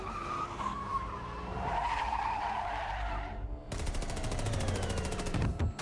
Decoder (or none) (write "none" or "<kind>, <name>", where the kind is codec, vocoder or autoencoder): vocoder, BigVGAN v2